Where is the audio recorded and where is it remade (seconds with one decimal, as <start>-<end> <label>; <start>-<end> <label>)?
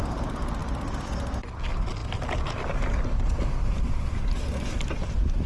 0.0-5.5 recorded